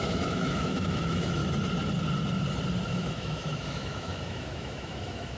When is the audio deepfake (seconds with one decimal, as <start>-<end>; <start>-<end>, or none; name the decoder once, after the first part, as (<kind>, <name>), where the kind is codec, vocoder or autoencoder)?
0.0-1.4 (autoencoder, DAC-VAE); 2.9-5.4